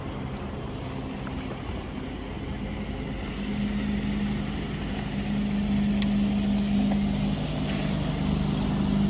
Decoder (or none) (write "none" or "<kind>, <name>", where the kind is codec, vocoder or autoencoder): none